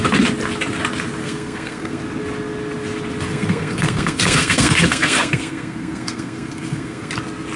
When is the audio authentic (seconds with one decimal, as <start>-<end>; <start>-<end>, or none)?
0.0-1.2; 2.0-3.3; 7.1-7.6